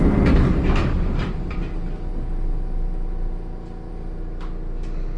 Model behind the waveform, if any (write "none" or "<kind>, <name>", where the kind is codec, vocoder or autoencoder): none